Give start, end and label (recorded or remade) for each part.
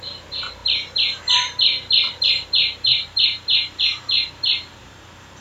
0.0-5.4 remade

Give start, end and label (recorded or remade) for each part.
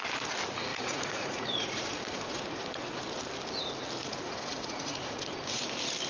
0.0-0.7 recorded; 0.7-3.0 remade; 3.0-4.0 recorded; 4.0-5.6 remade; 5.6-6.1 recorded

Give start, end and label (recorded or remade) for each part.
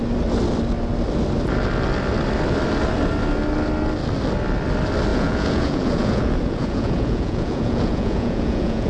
0.0-5.1 recorded; 5.1-8.9 remade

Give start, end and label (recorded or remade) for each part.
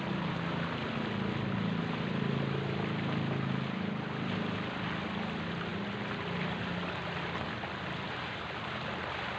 0.0-9.4 recorded